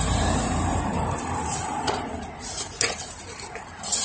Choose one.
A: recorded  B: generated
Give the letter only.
B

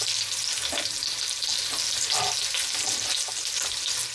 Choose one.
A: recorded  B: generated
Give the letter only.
A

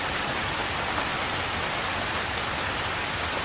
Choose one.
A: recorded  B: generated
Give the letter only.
A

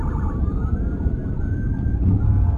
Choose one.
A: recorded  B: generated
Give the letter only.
B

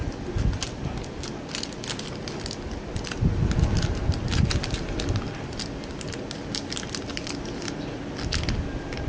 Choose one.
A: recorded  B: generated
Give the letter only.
A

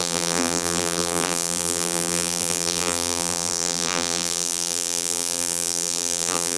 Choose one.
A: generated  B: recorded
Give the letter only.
A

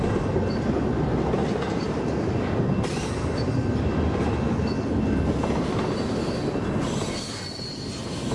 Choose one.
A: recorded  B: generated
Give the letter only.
A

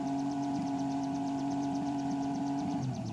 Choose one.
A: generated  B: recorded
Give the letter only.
A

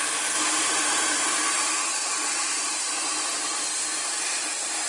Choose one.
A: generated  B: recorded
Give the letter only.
A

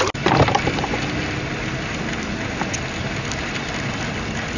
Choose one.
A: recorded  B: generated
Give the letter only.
A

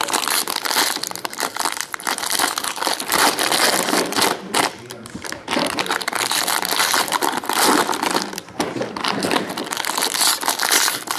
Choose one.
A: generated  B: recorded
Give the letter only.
A